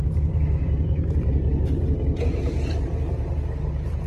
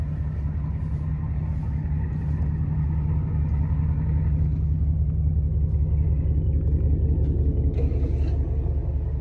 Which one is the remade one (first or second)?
first